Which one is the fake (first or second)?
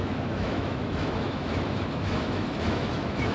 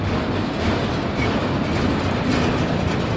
first